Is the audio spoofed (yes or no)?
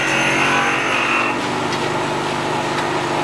no